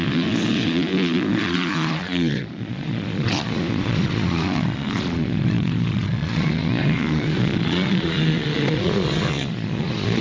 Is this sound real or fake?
fake